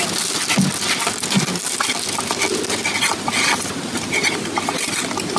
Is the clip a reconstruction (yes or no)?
no